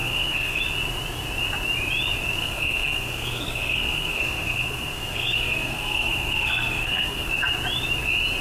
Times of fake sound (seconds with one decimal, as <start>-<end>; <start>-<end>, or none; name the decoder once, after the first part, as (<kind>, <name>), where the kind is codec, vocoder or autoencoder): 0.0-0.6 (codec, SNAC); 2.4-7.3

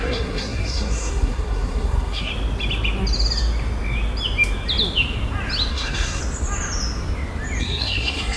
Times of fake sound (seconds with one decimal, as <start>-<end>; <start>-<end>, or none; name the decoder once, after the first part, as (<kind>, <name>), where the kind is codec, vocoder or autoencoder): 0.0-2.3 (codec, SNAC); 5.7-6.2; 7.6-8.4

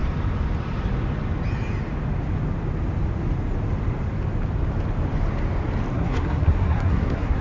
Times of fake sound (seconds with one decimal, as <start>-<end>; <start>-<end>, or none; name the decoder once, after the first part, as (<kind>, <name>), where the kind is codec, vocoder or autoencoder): 5.9-7.4 (codec, SNAC)